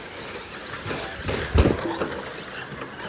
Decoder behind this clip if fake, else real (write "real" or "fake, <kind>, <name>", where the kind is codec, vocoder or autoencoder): real